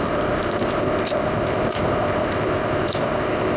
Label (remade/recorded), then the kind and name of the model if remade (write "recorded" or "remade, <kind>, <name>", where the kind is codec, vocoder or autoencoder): remade, codec, ZipCodec